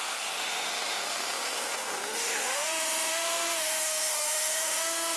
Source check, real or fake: fake